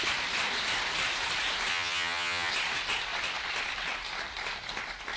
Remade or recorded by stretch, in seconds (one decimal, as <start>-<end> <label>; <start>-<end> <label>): 0.0-1.7 recorded; 1.7-2.5 remade; 2.5-5.2 recorded